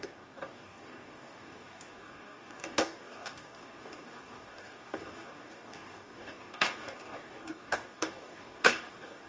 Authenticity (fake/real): fake